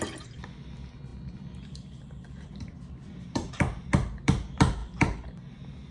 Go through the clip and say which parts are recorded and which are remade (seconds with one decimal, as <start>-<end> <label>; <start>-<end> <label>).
0.0-1.1 recorded; 1.1-3.5 remade; 3.5-5.9 recorded